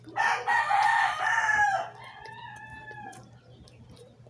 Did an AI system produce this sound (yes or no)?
no